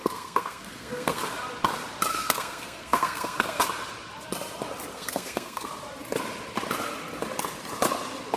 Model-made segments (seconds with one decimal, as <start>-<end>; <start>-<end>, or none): 0.0-1.2; 2.1-3.6; 4.9-5.7